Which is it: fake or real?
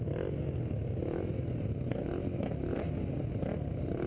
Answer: real